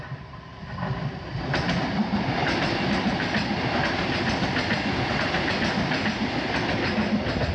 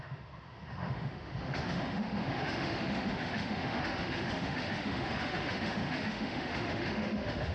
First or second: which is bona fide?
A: first